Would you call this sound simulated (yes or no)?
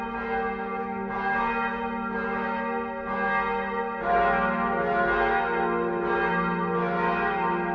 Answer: no